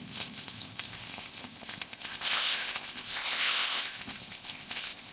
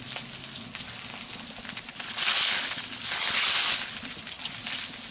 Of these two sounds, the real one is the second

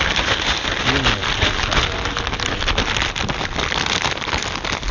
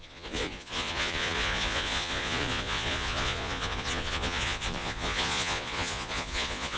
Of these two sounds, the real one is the first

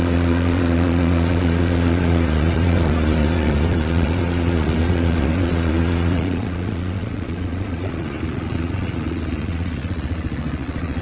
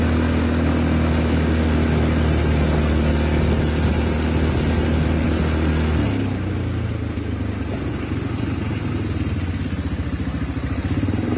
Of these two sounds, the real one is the second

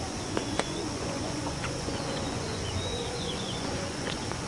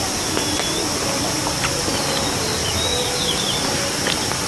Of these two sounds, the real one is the second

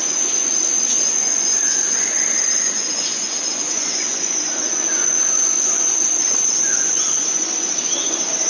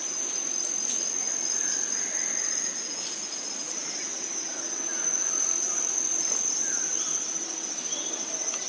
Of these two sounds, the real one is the second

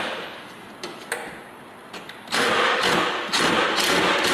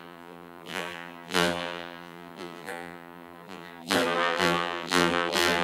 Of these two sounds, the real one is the first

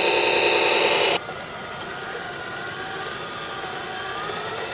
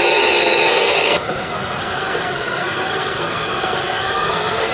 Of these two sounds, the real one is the first